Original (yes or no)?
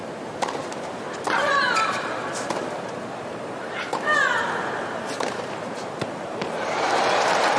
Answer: no